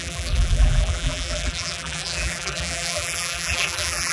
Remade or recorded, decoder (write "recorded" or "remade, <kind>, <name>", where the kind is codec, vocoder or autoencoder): remade, vocoder, BigVGAN v2